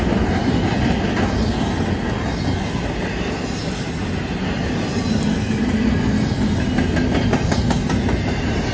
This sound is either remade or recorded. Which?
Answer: recorded